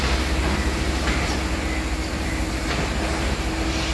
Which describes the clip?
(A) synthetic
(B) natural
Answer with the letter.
B